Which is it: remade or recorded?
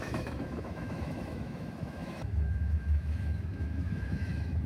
remade